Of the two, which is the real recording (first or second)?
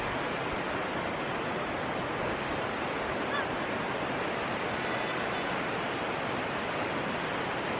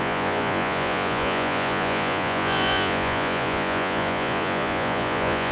first